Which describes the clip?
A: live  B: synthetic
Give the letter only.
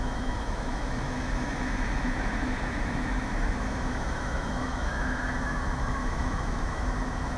B